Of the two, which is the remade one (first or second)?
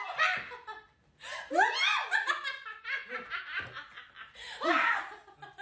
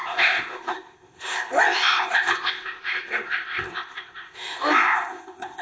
second